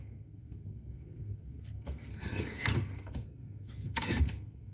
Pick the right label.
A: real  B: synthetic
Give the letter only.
B